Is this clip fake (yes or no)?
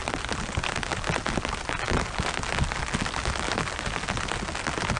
no